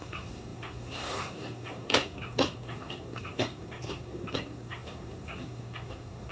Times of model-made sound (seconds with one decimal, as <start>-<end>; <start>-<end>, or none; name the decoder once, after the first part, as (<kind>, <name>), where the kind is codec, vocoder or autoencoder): 0.0-6.3 (codec, SNAC)